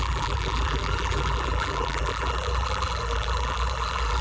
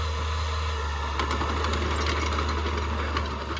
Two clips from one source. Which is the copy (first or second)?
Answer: first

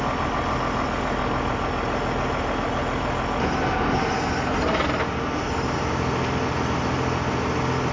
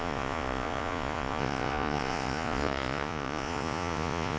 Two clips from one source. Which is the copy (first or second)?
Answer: second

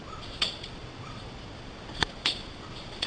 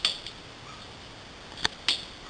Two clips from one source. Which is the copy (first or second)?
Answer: first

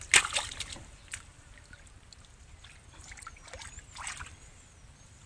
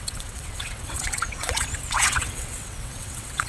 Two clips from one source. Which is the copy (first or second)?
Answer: second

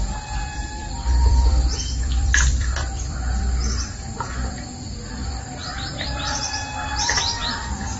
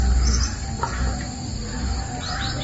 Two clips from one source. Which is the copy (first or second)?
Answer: first